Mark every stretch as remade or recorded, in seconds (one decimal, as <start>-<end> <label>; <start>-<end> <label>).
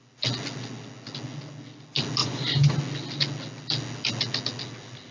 0.0-2.2 recorded; 2.2-2.8 remade; 2.8-5.1 recorded